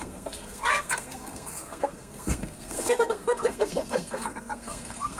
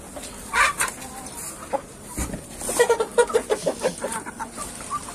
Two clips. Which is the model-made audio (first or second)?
first